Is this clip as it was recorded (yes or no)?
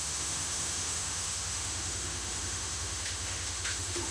no